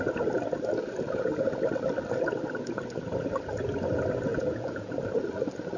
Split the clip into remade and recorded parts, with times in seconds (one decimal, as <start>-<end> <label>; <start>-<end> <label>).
0.0-4.3 recorded; 4.3-4.9 remade; 4.9-5.8 recorded